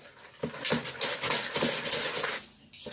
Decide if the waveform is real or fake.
real